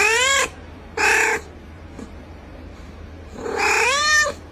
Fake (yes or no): yes